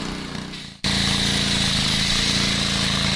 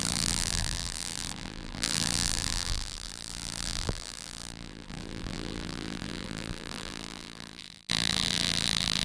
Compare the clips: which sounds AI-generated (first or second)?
second